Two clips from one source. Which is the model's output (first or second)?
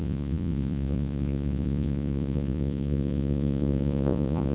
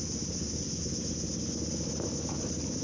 first